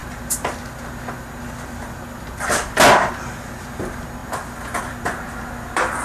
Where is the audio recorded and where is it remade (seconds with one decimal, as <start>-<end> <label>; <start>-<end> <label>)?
0.0-6.0 recorded